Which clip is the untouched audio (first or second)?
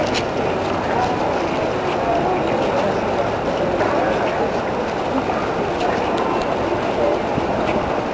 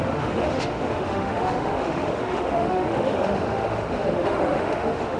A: first